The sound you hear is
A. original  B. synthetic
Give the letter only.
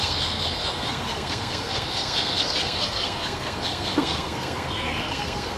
B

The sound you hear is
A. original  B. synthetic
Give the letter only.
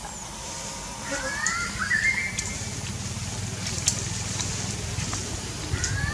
A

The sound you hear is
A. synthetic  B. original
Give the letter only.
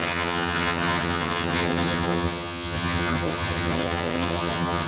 A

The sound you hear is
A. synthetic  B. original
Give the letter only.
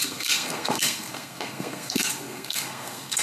A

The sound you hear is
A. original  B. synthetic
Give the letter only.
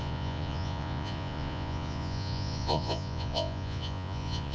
B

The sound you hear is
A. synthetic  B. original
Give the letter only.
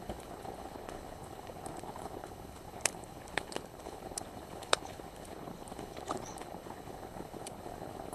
A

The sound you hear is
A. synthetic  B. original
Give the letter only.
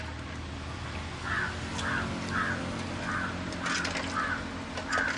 B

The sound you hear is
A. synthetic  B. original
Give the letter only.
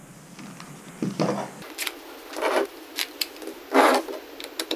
B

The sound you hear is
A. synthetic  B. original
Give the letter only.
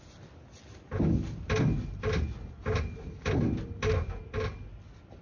B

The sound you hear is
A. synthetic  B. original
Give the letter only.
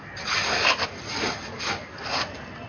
B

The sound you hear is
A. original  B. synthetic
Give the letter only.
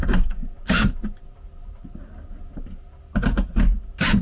A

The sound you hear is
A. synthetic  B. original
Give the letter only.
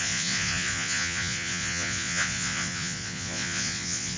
A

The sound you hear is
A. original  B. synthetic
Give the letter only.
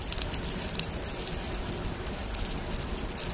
A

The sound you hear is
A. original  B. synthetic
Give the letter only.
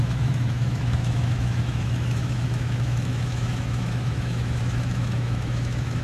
B